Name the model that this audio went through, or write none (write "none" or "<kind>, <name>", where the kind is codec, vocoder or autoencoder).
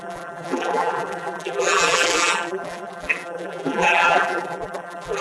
vocoder, BigVGAN v2